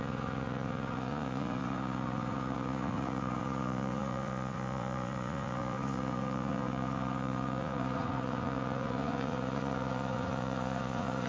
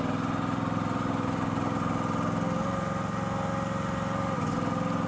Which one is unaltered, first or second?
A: second